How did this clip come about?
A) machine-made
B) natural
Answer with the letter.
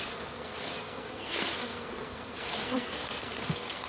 A